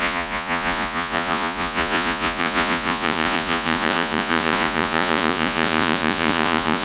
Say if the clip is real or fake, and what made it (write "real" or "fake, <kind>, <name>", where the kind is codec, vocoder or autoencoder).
fake, vocoder, Vocos